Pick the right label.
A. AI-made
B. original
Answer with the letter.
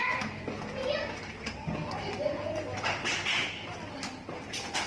B